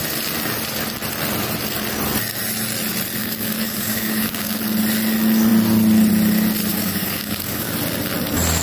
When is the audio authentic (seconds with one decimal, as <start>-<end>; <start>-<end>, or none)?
0.0-3.2; 4.6-6.7; 7.8-8.6